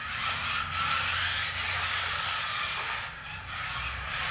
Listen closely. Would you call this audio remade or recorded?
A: recorded